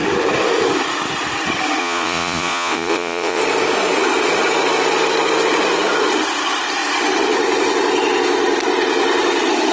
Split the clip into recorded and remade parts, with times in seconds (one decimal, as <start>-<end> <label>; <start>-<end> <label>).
0.0-1.8 recorded; 1.8-3.4 remade; 3.4-9.7 recorded